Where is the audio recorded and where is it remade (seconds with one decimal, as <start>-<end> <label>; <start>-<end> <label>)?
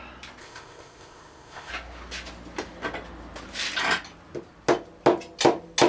0.0-0.4 recorded; 0.4-1.7 remade; 1.7-5.9 recorded